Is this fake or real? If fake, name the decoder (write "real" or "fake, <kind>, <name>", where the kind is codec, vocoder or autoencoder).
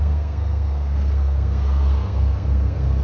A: fake, codec, SNAC